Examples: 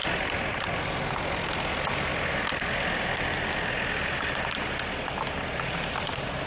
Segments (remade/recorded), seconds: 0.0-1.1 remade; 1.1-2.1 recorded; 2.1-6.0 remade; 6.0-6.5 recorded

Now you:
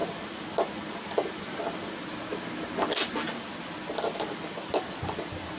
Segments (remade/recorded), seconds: 0.0-5.6 recorded

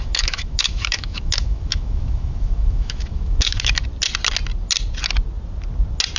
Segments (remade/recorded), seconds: 0.0-3.7 remade; 3.7-6.2 recorded

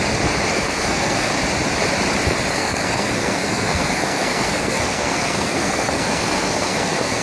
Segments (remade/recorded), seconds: 0.0-0.5 recorded; 0.5-1.3 remade; 1.3-2.5 recorded; 2.5-7.2 remade